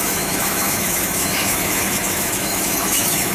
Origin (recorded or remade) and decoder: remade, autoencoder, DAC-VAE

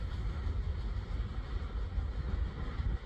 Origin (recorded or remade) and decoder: recorded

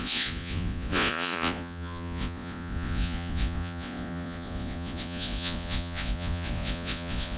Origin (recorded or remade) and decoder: remade, vocoder, Vocos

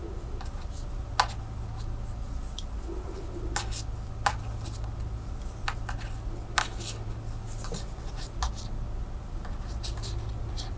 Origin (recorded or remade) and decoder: recorded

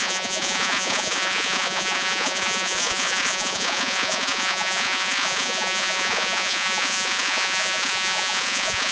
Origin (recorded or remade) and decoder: remade, vocoder, Vocos